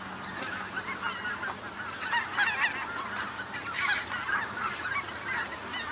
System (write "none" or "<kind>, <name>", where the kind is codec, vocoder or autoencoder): none